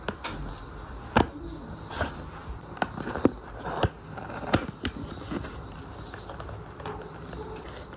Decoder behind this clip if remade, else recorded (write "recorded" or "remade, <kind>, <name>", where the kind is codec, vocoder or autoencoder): recorded